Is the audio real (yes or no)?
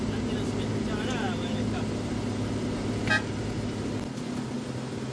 yes